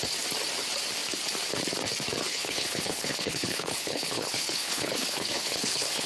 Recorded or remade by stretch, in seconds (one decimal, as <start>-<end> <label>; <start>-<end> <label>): 0.0-2.3 recorded; 2.3-6.1 remade